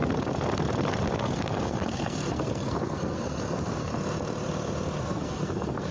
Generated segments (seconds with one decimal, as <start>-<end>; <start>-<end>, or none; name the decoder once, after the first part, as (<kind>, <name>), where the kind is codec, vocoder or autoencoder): 1.1-3.9 (codec, SNAC); 5.0-5.9